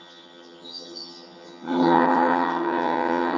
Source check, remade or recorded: remade